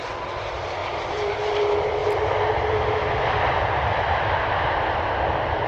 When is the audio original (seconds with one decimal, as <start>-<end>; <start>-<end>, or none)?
0.0-0.8; 1.6-5.7